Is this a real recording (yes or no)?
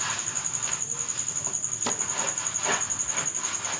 yes